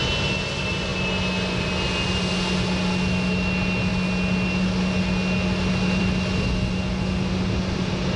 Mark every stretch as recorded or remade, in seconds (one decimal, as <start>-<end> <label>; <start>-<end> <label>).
0.0-8.2 recorded